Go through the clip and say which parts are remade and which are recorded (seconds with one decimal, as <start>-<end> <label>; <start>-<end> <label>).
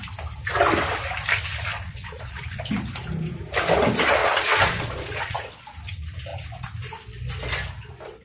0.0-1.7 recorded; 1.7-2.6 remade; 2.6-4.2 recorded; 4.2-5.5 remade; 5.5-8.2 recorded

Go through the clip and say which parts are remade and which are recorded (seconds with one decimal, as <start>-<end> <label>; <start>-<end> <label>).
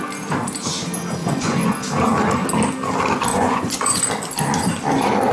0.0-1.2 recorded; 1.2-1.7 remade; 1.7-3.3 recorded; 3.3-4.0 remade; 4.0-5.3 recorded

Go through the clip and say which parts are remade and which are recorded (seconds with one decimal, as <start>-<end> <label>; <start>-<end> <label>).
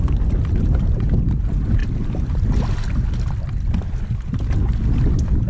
0.0-5.5 recorded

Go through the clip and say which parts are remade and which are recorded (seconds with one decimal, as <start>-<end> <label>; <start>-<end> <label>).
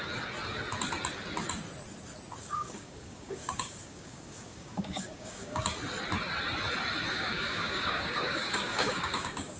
0.0-2.4 recorded; 2.4-5.6 remade; 5.6-7.1 recorded; 7.1-9.6 remade